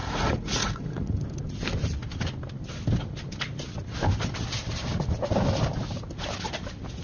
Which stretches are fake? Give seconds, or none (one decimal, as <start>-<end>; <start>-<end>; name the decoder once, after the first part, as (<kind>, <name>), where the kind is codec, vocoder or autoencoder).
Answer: 0.0-1.2 (vocoder, Vocos)